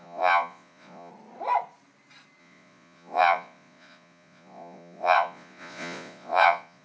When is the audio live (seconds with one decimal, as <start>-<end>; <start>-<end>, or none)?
1.1-2.4